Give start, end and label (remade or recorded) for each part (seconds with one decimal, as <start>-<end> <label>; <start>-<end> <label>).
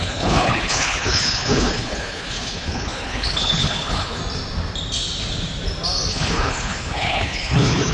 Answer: 0.0-4.2 remade; 4.2-6.1 recorded; 6.1-7.9 remade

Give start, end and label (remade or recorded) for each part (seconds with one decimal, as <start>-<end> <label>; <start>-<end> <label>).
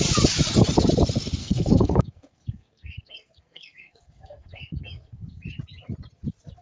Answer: 0.0-1.4 recorded; 1.4-5.4 remade; 5.4-6.6 recorded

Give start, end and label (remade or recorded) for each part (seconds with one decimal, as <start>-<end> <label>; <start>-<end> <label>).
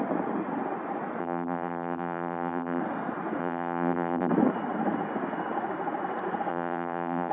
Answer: 0.0-1.2 recorded; 1.2-2.8 remade; 2.8-3.4 recorded; 3.4-4.3 remade; 4.3-6.5 recorded; 6.5-7.3 remade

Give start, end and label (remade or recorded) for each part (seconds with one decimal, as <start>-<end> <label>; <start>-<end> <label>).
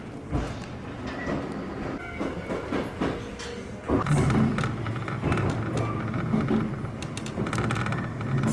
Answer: 0.0-8.5 recorded